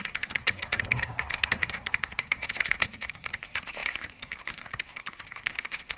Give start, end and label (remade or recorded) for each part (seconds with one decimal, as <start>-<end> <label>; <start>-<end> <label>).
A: 0.0-6.0 remade

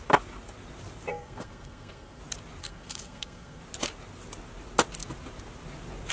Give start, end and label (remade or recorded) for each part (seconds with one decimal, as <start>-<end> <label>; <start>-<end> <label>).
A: 0.0-1.1 recorded; 1.1-2.2 remade; 2.2-2.6 recorded; 2.6-3.6 remade; 3.6-6.1 recorded

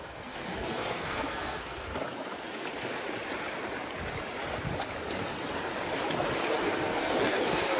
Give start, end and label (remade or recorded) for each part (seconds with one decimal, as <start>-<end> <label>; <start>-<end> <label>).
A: 0.0-1.9 remade; 1.9-6.6 recorded; 6.6-7.8 remade

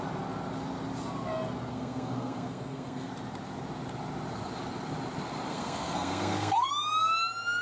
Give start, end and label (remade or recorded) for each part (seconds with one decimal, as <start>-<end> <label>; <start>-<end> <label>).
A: 0.0-1.7 recorded; 1.7-3.1 remade; 3.1-5.5 recorded; 5.5-6.7 remade; 6.7-7.6 recorded

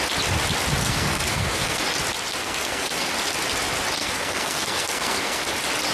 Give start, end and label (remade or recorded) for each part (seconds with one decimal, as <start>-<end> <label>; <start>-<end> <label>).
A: 0.0-0.8 recorded; 0.8-1.8 remade; 1.8-2.4 recorded; 2.4-3.1 remade; 3.1-4.0 recorded; 4.0-5.5 remade; 5.5-5.9 recorded

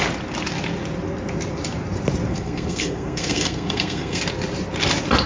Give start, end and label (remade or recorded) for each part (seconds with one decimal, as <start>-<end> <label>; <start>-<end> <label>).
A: 0.0-2.3 recorded; 2.3-4.2 remade; 4.2-5.3 recorded